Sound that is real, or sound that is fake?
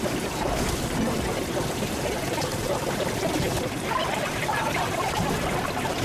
real